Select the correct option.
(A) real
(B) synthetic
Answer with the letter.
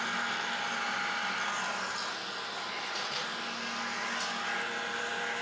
A